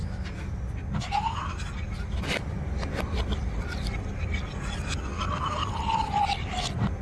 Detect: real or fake real